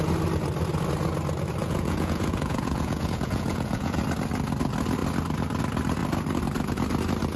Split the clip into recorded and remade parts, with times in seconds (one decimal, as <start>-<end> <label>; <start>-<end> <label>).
0.0-1.6 recorded; 1.6-4.0 remade; 4.0-7.4 recorded